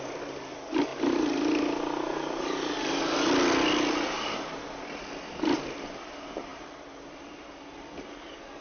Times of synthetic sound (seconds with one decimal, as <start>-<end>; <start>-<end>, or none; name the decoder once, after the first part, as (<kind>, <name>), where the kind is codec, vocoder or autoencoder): 0.9-1.6 (vocoder, BigVGAN v2)